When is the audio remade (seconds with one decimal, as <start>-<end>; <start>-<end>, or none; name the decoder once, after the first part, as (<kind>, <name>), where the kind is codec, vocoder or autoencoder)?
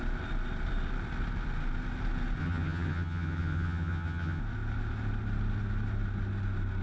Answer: 2.4-4.4 (vocoder, HiFi-GAN)